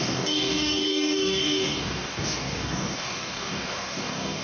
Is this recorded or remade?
remade